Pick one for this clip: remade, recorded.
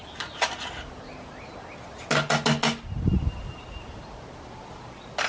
recorded